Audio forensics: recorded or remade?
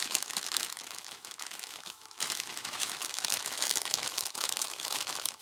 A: remade